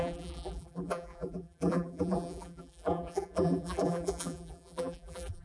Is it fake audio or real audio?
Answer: fake